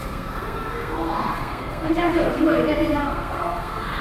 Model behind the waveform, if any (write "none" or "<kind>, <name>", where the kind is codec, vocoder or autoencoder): codec, SNAC